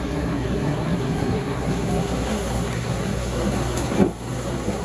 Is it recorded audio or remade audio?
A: remade